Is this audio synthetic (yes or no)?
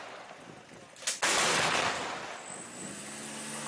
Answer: no